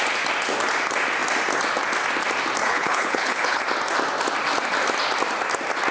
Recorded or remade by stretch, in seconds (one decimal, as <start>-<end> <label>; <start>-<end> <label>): 0.0-2.6 recorded; 2.6-3.6 remade; 3.6-5.9 recorded